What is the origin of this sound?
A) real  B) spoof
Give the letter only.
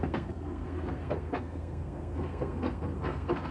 B